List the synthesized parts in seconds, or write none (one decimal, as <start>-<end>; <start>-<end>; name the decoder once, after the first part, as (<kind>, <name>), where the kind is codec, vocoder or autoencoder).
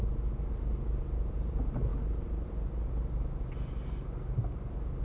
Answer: none